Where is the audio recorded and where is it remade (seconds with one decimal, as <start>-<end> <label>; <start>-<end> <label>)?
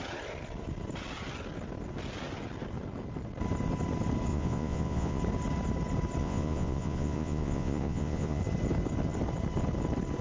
0.0-4.3 recorded; 4.3-5.2 remade; 5.2-6.2 recorded; 6.2-8.4 remade; 8.4-10.2 recorded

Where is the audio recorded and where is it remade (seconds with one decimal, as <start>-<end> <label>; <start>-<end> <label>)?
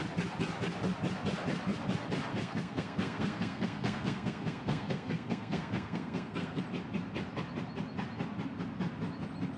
0.0-2.3 recorded; 2.3-6.6 remade; 6.6-9.6 recorded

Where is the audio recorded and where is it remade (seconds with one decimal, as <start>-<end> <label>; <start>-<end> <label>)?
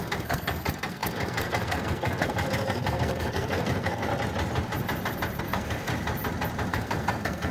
0.0-4.1 remade; 4.1-5.4 recorded; 5.4-5.9 remade; 5.9-6.7 recorded; 6.7-7.5 remade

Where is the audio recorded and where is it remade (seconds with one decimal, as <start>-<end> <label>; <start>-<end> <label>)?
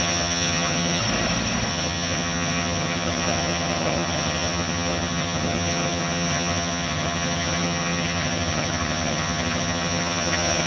0.0-1.0 remade; 1.0-1.7 recorded; 1.7-10.7 remade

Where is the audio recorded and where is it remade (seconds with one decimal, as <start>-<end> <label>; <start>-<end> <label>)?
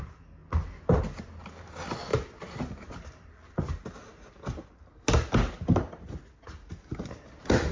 0.0-7.7 recorded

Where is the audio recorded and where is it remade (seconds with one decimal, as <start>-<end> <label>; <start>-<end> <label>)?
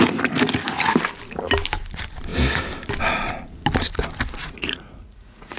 0.0-4.4 recorded; 4.4-5.6 remade